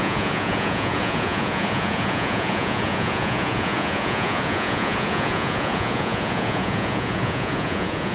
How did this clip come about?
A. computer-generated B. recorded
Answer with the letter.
A